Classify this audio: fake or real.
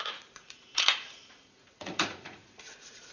fake